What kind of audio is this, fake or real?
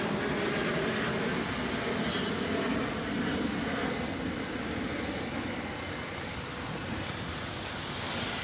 real